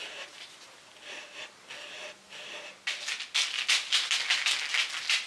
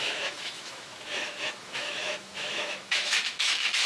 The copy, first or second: second